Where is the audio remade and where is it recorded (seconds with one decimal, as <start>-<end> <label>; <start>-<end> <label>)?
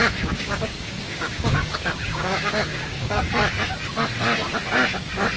0.0-3.2 remade; 3.2-5.4 recorded